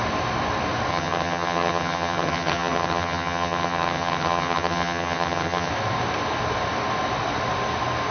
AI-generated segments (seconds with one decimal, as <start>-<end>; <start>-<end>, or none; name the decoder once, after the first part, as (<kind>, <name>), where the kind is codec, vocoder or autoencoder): 0.9-5.7 (vocoder, HiFi-GAN)